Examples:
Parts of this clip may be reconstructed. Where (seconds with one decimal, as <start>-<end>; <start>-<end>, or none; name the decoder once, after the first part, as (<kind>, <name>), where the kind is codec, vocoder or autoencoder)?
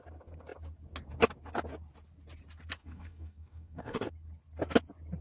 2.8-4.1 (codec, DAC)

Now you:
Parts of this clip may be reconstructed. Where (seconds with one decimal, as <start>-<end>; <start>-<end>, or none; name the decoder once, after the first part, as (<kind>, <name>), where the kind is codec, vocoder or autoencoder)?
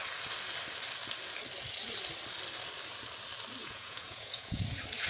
3.6-4.6 (vocoder, Vocos)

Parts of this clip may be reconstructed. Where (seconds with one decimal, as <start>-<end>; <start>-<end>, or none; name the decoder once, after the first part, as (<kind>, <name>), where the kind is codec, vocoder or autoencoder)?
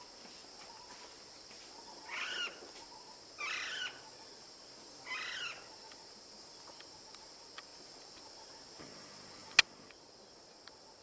none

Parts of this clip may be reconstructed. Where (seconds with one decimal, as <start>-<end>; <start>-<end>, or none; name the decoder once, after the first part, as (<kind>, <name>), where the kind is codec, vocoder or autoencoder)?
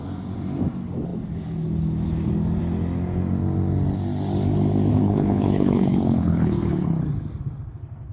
4.9-6.9 (codec, HILCodec)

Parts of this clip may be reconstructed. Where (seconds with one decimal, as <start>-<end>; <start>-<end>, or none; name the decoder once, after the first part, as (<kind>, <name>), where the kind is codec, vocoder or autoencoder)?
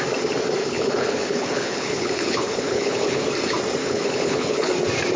0.6-3.2 (codec, HILCodec); 3.8-4.7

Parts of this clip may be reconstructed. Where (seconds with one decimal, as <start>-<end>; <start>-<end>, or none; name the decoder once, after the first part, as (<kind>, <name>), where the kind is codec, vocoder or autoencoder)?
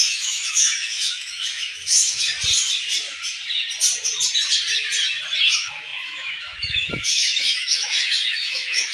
0.0-2.3 (autoencoder, DAC-VAE); 5.4-8.9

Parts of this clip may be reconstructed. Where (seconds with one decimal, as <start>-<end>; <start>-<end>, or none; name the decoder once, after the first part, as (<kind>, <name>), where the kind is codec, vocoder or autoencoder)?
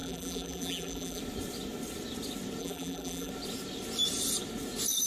0.0-1.2 (vocoder, BigVGAN v2); 2.6-3.3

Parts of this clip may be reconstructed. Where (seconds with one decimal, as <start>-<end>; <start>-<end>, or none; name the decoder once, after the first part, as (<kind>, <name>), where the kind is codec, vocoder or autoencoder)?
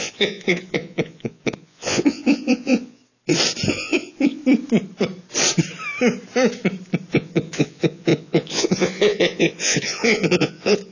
0.0-3.0 (vocoder, Vocos); 3.7-4.4; 7.1-10.9